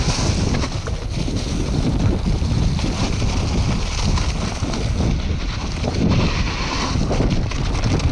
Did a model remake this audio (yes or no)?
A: no